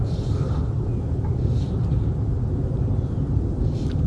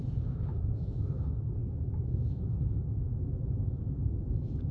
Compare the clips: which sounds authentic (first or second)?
first